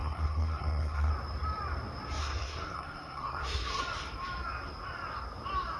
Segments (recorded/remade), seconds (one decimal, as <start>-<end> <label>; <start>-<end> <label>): 0.0-1.1 remade; 1.1-2.2 recorded; 2.2-3.8 remade; 3.8-5.8 recorded